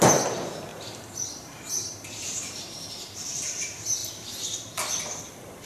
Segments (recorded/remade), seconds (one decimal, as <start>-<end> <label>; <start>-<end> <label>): 0.0-0.7 recorded; 0.7-2.9 remade; 2.9-5.7 recorded